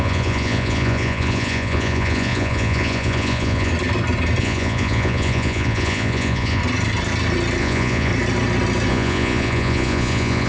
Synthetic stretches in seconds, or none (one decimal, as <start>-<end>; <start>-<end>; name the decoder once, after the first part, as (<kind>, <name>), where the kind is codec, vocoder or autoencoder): 0.0-3.7 (vocoder, Vocos); 4.4-6.6; 7.6-8.1; 8.9-10.5